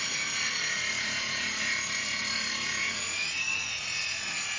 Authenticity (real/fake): fake